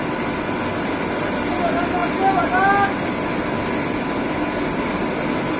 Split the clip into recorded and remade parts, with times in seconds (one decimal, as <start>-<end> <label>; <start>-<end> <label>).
0.0-5.6 recorded